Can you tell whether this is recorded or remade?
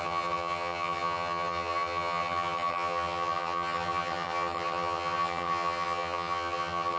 remade